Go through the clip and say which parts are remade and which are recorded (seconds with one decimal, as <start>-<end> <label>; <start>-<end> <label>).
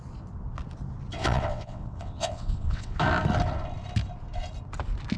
0.0-1.2 recorded; 1.2-3.0 remade; 3.0-5.2 recorded